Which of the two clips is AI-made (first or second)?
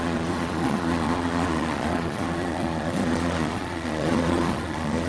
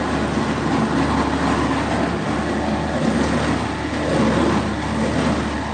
first